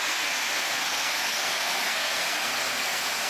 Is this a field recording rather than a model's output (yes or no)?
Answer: no